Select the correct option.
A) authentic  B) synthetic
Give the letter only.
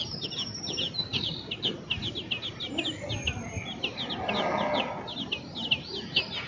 A